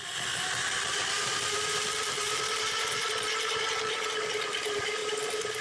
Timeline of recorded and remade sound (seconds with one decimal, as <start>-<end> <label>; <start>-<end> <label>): 0.0-5.0 remade; 5.0-5.6 recorded